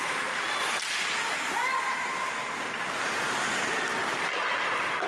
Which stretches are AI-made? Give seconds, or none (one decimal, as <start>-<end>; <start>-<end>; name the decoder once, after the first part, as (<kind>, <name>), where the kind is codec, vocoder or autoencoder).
none